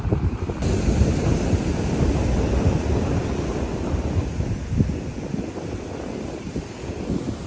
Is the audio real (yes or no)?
yes